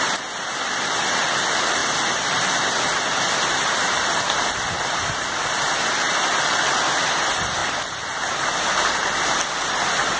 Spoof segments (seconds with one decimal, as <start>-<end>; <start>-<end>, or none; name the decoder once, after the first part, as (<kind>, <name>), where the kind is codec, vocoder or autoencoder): none

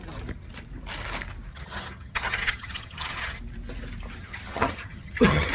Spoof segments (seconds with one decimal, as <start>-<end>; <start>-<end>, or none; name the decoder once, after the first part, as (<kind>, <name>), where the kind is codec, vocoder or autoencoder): 1.5-3.4 (vocoder, HiFi-GAN); 4.2-5.5

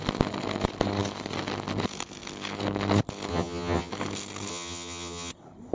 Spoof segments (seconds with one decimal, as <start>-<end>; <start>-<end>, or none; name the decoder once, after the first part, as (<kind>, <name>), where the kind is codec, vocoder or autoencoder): 3.3-3.9 (vocoder, HiFi-GAN); 4.5-5.3

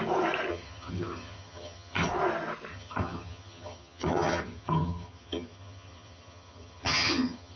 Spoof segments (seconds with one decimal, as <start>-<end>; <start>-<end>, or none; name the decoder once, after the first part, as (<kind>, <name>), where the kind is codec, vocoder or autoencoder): 0.5-2.1 (vocoder, HiFi-GAN); 2.7-7.6

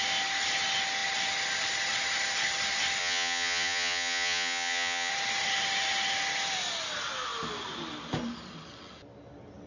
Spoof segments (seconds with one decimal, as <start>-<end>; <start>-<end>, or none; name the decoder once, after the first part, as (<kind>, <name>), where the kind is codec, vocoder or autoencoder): 3.0-5.1 (vocoder, HiFi-GAN)

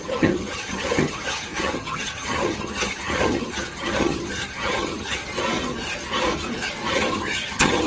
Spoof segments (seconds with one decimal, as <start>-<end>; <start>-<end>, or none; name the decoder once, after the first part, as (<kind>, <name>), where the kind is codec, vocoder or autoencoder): 0.0-5.2 (vocoder, HiFi-GAN); 6.9-7.9

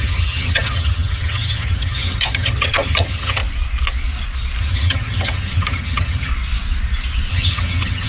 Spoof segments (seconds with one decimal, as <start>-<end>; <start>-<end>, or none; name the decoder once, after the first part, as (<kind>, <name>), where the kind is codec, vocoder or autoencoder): 0.0-3.4 (vocoder, HiFi-GAN); 4.6-6.3; 7.3-8.1

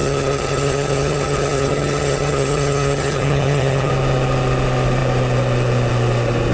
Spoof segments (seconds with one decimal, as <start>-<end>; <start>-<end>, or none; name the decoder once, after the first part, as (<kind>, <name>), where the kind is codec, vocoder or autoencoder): 0.0-3.9 (vocoder, HiFi-GAN)